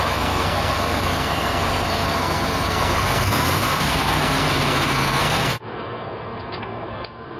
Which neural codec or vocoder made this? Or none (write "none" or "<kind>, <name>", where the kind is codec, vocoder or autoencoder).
codec, SNAC